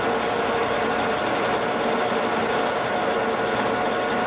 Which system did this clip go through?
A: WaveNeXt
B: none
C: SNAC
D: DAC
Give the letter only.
B